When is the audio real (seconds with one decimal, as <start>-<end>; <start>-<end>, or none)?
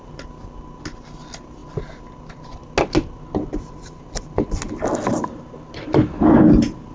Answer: 0.0-6.9